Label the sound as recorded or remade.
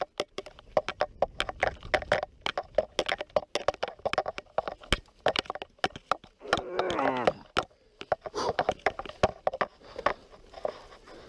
recorded